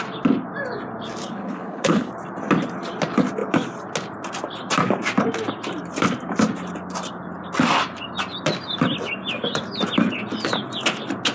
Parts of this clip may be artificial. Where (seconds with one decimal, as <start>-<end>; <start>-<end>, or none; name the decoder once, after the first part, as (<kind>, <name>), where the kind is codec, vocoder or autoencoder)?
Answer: 1.2-2.1 (codec, HILCodec)